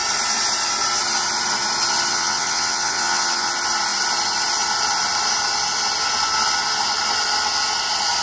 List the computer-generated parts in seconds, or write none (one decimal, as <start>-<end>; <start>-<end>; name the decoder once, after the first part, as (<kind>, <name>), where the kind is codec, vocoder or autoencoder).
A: 2.1-3.5 (vocoder, WaveNeXt)